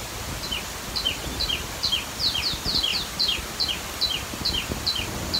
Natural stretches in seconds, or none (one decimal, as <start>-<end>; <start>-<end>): 0.0-5.4